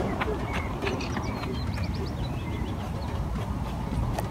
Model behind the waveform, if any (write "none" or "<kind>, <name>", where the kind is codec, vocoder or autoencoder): vocoder, BigVGAN v2